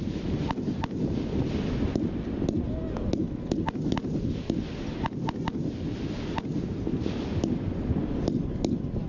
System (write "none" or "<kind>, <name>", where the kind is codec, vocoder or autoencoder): none